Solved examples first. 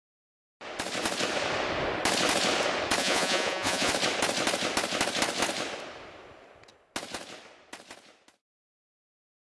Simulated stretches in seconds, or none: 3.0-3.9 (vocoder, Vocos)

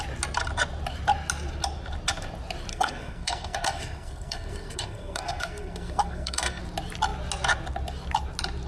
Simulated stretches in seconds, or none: 2.7-6.6 (codec, SNAC)

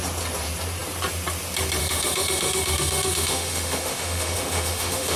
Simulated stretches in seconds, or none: 1.8-5.2 (autoencoder, DAC-VAE)

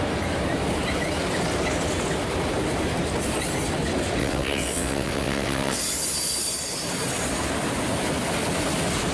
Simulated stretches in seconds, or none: 4.2-5.8 (vocoder, WaveNeXt)

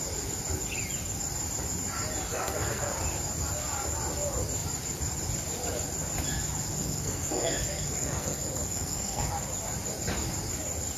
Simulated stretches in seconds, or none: 2.3-2.9 (codec, SNAC); 6.7-9.5

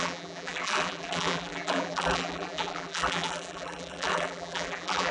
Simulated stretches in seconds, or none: 0.0-5.1 (vocoder, BigVGAN v2)

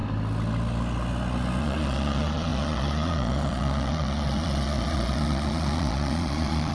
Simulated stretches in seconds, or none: 1.6-6.7 (vocoder, Vocos)